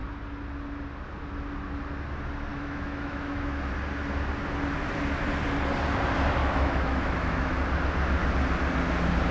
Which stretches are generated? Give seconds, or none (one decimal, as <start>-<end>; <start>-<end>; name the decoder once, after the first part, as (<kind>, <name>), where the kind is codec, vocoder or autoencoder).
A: 2.5-3.7 (autoencoder, DAC-VAE); 6.4-7.6